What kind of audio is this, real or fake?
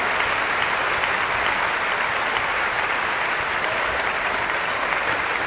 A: real